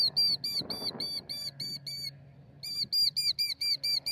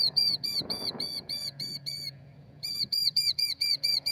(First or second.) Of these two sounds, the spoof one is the second